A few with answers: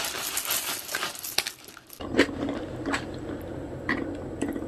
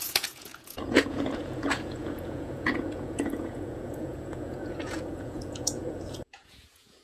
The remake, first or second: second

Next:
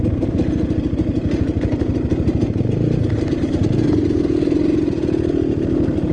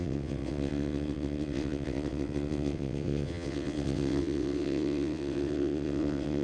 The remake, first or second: second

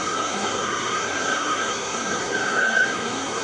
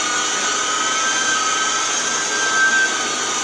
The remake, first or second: first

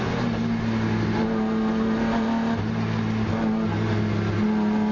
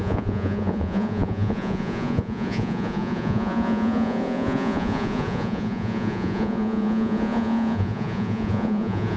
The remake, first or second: second